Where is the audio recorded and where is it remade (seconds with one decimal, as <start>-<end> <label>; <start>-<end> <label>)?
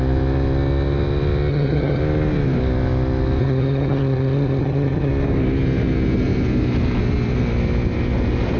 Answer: 0.0-1.5 recorded; 1.5-2.0 remade; 2.0-3.4 recorded; 3.4-5.1 remade; 5.1-8.6 recorded